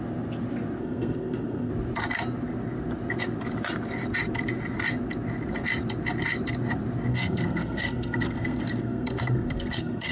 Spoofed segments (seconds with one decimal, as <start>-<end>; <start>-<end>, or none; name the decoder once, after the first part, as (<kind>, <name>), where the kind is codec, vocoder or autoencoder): 0.8-1.7 (codec, SNAC); 7.1-10.1